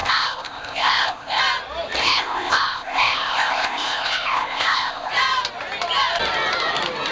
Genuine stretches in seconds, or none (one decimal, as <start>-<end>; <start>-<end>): 1.4-2.0; 5.1-7.1